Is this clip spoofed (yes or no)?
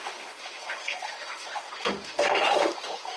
yes